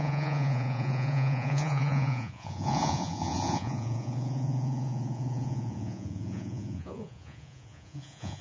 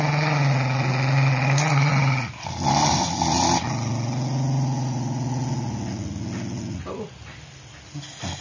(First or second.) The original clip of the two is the second